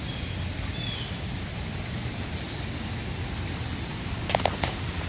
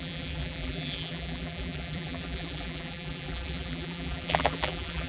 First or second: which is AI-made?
second